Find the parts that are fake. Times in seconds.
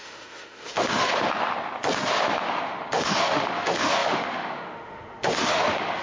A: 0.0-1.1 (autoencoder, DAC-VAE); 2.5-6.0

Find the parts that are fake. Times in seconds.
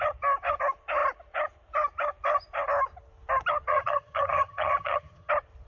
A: 3.7-5.3 (vocoder, HiFi-GAN)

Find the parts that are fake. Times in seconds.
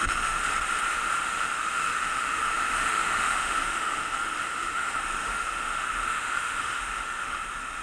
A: 0.0-0.4 (autoencoder, DAC-VAE); 0.9-7.8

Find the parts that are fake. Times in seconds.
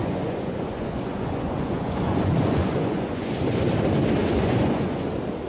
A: 0.0-3.3 (vocoder, Vocos); 4.2-5.1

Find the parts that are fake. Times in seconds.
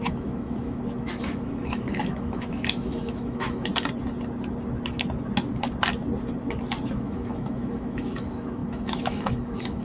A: 0.0-3.7 (autoencoder, DAC-VAE); 6.9-9.8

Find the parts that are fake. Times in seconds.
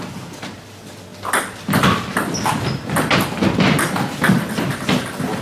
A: none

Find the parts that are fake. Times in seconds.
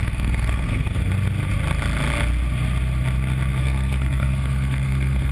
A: 0.0-1.0 (codec, SNAC); 3.6-5.3